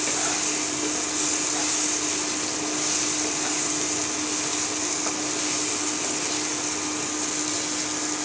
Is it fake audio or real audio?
real